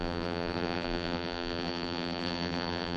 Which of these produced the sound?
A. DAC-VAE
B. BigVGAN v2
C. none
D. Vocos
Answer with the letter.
B